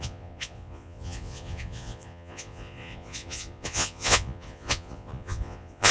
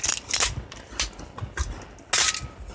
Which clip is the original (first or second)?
second